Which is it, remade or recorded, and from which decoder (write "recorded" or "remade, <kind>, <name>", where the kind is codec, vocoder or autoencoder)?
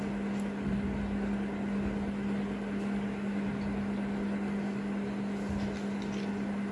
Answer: recorded